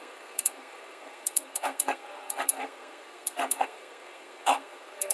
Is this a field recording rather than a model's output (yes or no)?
no